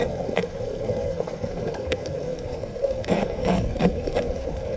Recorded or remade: remade